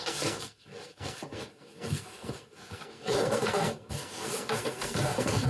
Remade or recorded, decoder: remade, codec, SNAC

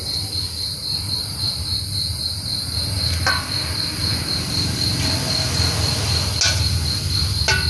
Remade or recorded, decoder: recorded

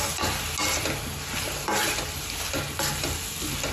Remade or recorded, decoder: recorded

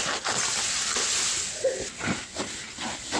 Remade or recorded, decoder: recorded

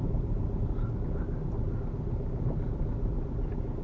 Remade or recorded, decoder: recorded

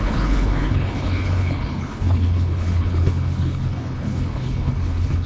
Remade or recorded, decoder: remade, codec, HILCodec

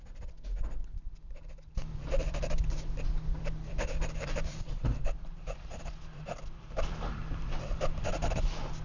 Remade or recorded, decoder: remade, vocoder, BigVGAN v2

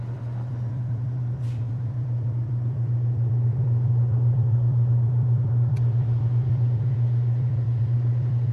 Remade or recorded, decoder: remade, vocoder, BigVGAN v2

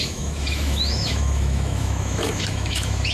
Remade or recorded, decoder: remade, autoencoder, DAC-VAE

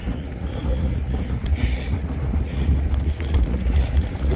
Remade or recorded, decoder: remade, vocoder, Vocos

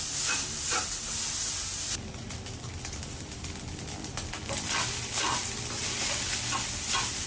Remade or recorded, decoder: recorded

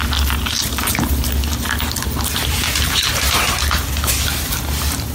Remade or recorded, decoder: recorded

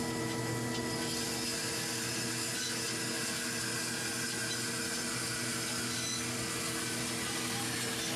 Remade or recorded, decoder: recorded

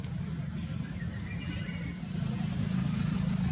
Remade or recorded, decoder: recorded